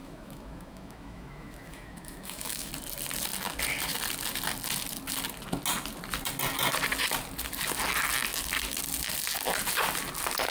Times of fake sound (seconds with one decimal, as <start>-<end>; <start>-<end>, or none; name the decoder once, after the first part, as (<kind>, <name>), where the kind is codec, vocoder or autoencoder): 0.0-2.7 (autoencoder, DAC-VAE)